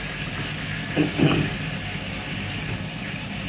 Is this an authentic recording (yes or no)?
yes